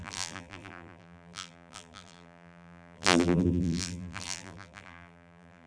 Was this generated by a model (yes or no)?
yes